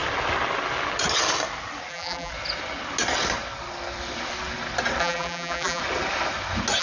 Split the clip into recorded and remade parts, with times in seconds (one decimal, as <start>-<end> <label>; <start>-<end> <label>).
0.0-1.9 recorded; 1.9-2.3 remade; 2.3-5.0 recorded; 5.0-5.8 remade; 5.8-6.8 recorded